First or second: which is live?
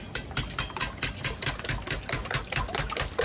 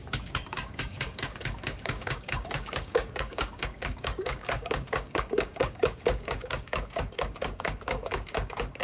first